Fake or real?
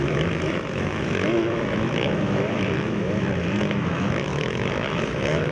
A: fake